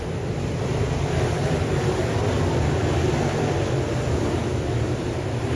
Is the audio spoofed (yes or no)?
yes